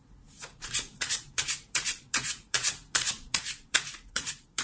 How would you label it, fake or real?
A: fake